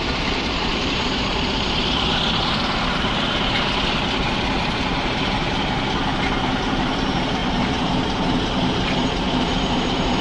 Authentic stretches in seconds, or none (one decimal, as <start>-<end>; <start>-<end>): none